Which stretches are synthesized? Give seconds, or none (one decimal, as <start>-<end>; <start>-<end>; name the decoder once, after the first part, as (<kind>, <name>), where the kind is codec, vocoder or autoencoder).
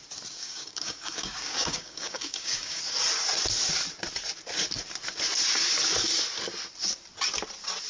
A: 0.4-2.8 (codec, DAC)